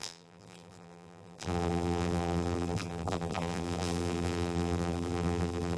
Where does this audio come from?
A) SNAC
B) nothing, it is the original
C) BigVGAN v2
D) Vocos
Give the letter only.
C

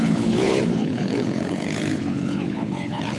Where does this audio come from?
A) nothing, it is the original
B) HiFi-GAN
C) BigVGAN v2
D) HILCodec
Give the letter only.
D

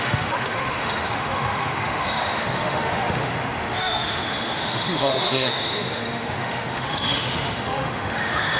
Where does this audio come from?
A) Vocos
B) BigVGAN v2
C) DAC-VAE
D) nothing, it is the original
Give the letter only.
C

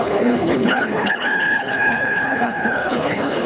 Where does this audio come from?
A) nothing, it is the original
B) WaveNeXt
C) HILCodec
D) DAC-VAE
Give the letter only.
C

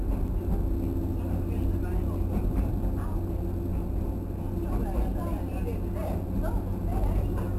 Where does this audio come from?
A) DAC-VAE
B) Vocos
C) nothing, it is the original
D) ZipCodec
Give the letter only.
C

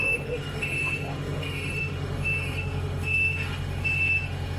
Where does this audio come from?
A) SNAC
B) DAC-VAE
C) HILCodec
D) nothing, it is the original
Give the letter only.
B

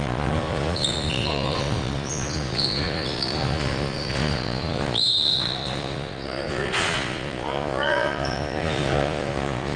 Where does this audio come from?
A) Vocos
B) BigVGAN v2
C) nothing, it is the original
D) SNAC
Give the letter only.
A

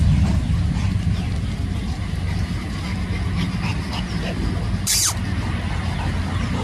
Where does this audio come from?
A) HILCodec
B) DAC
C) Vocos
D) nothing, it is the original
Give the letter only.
D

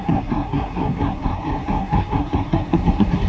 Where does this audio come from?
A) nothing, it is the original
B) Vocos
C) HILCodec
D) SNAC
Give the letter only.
D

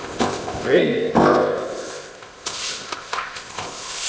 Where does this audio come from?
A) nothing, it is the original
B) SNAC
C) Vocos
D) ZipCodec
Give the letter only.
D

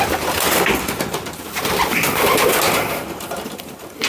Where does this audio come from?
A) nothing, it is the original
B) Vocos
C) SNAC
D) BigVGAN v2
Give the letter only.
A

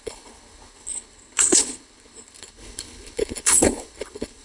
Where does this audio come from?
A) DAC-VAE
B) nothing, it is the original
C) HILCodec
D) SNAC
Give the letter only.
C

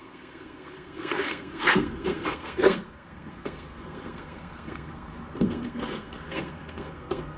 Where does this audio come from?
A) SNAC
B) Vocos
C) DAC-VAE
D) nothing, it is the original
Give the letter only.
A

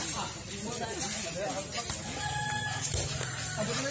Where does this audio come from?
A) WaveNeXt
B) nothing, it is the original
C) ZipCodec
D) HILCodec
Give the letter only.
B